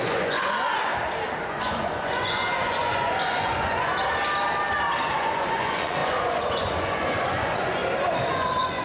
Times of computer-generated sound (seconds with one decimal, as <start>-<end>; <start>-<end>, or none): 0.0-0.9; 1.4-3.9; 5.1-7.8; 8.3-8.8